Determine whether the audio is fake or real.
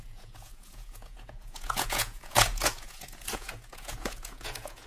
fake